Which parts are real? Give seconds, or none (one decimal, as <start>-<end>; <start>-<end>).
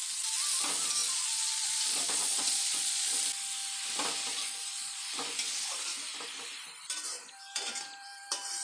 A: 0.0-1.0; 3.2-4.3; 5.0-8.6